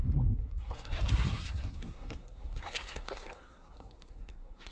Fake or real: fake